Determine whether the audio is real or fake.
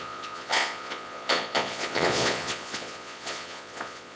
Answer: fake